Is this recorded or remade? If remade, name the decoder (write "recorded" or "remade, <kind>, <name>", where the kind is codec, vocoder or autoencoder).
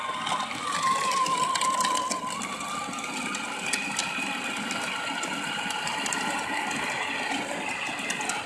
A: recorded